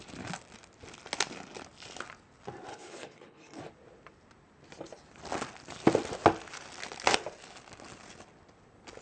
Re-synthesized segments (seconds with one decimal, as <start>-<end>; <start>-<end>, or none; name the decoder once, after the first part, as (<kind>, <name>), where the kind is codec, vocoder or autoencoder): 2.7-3.6 (codec, HILCodec)